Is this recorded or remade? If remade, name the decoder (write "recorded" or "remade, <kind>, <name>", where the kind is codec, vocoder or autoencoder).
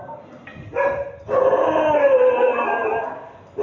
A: recorded